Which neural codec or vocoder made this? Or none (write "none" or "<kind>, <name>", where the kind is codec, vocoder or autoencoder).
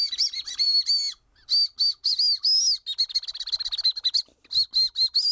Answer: none